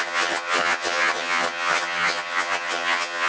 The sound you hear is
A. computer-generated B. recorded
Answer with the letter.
A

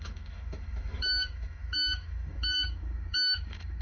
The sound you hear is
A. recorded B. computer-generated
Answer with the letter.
B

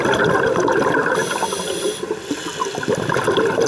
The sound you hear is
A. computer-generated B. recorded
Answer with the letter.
B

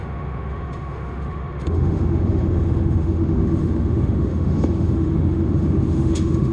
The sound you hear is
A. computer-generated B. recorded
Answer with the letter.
A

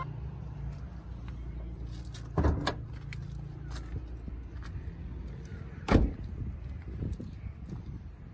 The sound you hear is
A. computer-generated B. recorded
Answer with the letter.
B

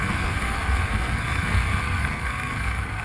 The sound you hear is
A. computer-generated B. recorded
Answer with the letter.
A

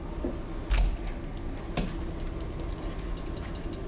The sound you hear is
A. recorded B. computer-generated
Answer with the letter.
A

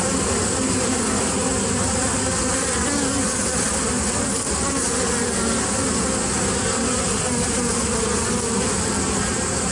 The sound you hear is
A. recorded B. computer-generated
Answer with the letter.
A